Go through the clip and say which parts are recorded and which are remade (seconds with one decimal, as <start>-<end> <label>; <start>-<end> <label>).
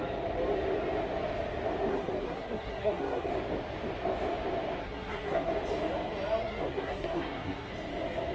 0.0-1.9 recorded; 1.9-3.3 remade; 3.3-4.8 recorded; 4.8-5.5 remade; 5.5-6.4 recorded; 6.4-7.7 remade; 7.7-8.3 recorded